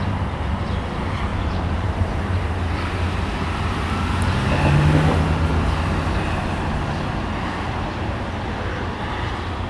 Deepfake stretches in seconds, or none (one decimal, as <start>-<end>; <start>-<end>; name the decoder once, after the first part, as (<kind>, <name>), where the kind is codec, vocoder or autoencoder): 1.3-2.5 (vocoder, BigVGAN v2)